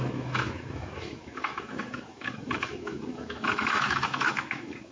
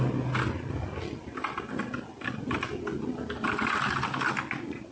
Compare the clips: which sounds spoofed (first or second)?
first